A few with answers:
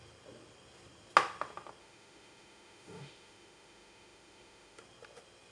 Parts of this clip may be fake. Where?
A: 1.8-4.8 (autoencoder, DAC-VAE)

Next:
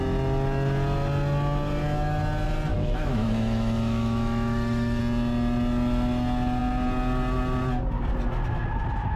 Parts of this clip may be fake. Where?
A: 2.7-5.0 (autoencoder, DAC-VAE)

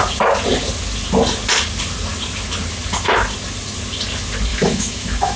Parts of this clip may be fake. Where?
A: 4.5-5.4 (autoencoder, DAC-VAE)